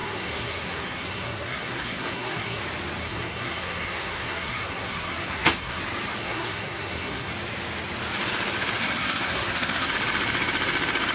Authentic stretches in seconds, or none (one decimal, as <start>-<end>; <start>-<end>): 2.6-3.0; 5.8-6.2; 7.3-8.8; 9.9-11.1